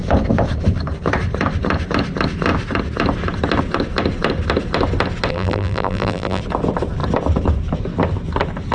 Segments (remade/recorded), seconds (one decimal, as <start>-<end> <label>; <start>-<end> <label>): 0.0-5.3 recorded; 5.3-6.4 remade; 6.4-8.7 recorded

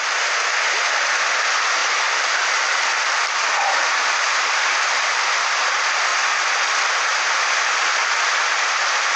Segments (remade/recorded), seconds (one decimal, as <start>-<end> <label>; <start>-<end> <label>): 0.0-1.8 recorded; 1.8-5.2 remade; 5.2-6.1 recorded; 6.1-6.9 remade; 6.9-9.2 recorded

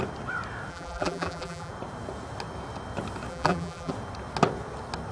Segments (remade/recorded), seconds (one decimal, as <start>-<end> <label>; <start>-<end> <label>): 0.0-0.7 recorded; 0.7-1.7 remade; 1.7-3.3 recorded; 3.3-3.9 remade; 3.9-5.1 recorded

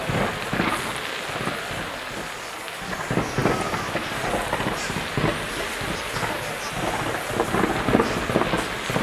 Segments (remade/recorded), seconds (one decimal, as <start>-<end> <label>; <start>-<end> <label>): 0.0-9.0 recorded